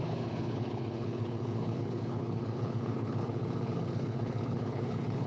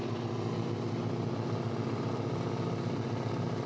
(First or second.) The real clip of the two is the second